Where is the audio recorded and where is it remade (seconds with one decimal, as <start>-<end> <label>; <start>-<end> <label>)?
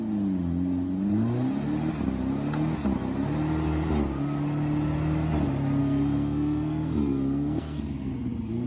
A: 0.0-5.8 recorded; 5.8-8.1 remade; 8.1-8.7 recorded